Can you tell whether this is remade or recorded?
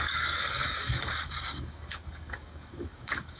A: remade